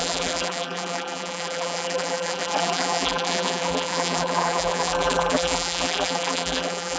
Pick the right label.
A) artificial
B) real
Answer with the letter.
A